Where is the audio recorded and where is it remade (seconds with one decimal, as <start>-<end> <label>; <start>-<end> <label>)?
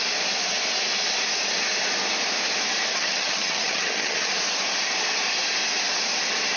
0.0-2.9 recorded; 2.9-4.3 remade; 4.3-6.6 recorded